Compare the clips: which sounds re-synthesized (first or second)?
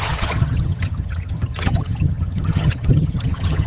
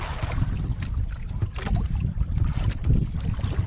first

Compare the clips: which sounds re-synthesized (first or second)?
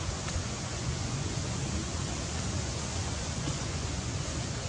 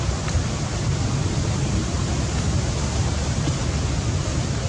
first